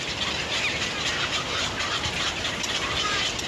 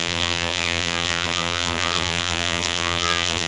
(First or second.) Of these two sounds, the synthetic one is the second